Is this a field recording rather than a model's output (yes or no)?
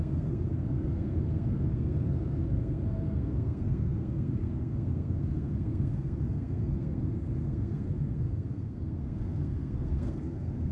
no